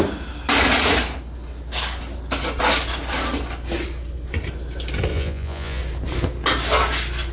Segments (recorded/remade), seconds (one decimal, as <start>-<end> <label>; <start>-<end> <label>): 0.0-5.1 recorded; 5.1-5.8 remade; 5.8-7.3 recorded